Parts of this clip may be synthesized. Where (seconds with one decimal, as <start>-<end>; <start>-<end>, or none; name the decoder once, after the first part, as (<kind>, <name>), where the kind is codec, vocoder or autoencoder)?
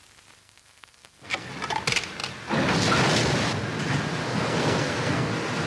0.4-1.5 (codec, SNAC); 4.3-5.3